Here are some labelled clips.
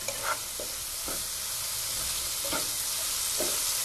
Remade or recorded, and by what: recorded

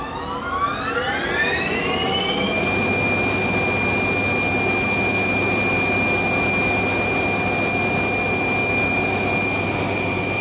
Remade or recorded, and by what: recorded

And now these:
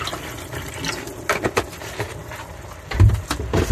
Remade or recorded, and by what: recorded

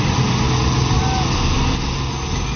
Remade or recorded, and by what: recorded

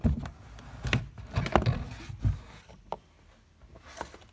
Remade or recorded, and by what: recorded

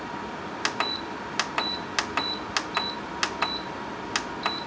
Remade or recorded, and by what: recorded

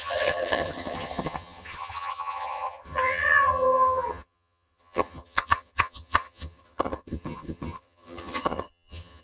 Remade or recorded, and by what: remade, vocoder, HiFi-GAN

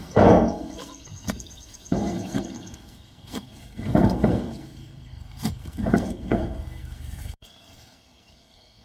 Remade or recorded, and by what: remade, codec, SNAC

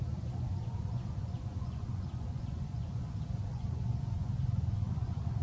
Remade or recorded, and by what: remade, vocoder, Vocos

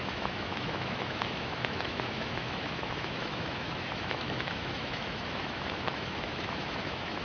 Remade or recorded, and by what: remade, autoencoder, DAC-VAE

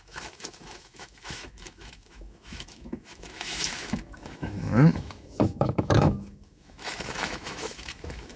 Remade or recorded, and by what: remade, autoencoder, DAC-VAE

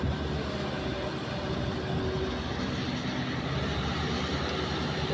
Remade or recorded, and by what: recorded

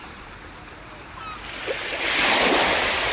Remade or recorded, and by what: recorded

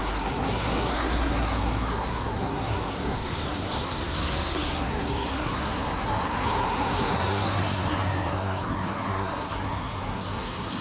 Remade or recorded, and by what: remade, codec, SNAC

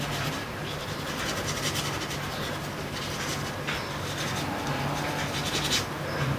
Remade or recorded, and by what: recorded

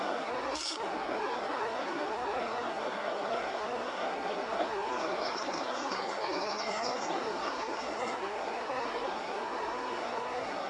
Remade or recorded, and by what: remade, codec, SNAC